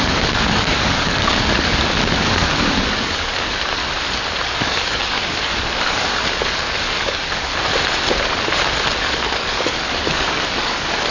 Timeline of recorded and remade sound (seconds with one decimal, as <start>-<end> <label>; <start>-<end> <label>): 0.0-3.8 remade; 3.8-4.3 recorded; 4.3-7.5 remade; 7.5-9.0 recorded; 9.0-11.1 remade